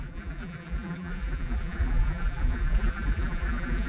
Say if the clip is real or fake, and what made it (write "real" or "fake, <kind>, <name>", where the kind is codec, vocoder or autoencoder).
fake, vocoder, BigVGAN v2